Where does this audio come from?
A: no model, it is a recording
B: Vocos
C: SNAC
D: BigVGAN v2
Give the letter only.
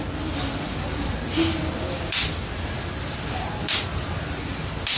A